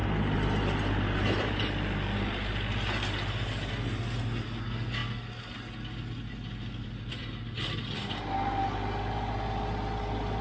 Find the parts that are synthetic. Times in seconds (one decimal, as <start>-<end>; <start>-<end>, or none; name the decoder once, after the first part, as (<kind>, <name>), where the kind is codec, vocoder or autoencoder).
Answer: none